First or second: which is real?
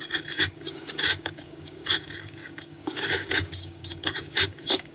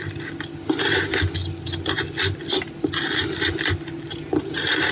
second